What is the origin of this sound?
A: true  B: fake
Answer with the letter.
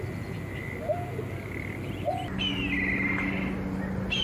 A